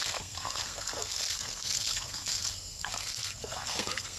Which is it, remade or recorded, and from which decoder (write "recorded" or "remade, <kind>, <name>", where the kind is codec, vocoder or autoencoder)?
remade, codec, SNAC